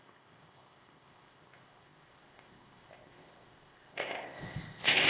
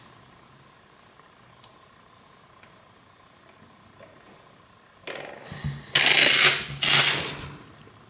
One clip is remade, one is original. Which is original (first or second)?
second